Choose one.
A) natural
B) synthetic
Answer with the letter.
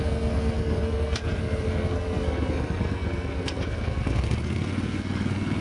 B